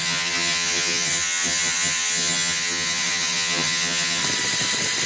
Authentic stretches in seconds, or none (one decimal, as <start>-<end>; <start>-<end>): 4.2-5.1